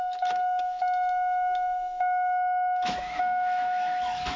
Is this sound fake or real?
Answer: fake